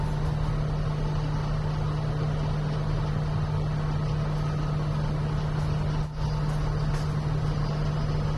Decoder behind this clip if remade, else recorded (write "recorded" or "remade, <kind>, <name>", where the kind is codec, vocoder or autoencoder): recorded